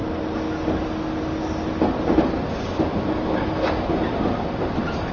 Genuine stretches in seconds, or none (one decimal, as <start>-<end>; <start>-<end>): 0.0-5.1